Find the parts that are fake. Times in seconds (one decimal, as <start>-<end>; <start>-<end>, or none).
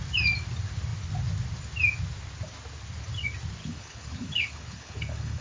3.6-5.4